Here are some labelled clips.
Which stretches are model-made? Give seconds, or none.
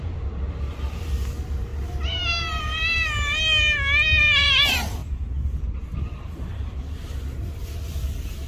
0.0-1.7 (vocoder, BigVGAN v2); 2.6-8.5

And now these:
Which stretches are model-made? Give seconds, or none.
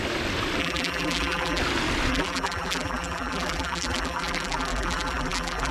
0.6-1.6 (vocoder, BigVGAN v2); 2.1-5.7